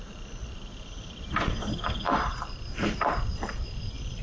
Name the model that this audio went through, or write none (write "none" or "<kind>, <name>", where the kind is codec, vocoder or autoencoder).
none